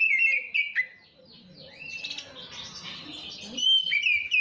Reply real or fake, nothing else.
real